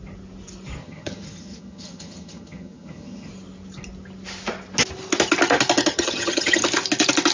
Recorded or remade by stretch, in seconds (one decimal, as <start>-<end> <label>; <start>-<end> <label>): 0.0-0.8 recorded; 0.8-3.3 remade; 3.3-5.9 recorded; 5.9-6.6 remade; 6.6-7.3 recorded